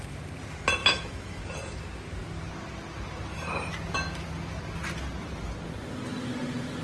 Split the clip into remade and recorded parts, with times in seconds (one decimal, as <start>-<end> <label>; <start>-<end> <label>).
0.0-0.8 recorded; 0.8-1.4 remade; 1.4-6.8 recorded